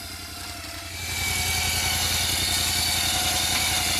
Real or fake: real